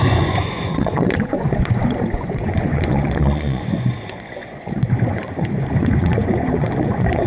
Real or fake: fake